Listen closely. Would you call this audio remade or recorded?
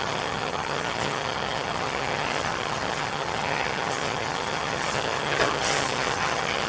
remade